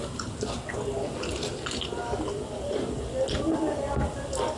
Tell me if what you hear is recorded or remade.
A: recorded